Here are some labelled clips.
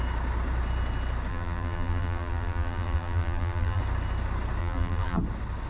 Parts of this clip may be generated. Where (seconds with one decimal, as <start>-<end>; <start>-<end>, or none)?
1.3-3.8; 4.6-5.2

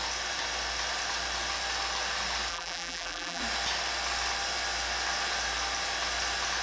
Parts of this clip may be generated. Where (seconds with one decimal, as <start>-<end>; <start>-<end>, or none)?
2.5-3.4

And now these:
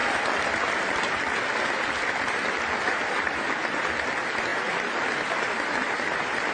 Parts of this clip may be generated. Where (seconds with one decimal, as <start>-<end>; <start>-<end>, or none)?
0.0-3.8; 4.5-6.5

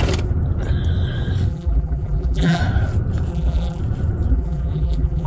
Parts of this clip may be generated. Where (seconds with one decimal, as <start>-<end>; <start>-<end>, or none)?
1.5-2.6; 3.3-3.8; 4.3-5.3

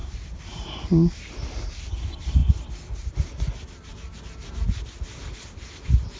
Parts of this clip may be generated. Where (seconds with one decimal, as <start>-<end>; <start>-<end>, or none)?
0.0-1.7

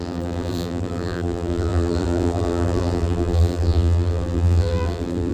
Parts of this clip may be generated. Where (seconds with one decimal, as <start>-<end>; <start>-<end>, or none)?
0.0-5.3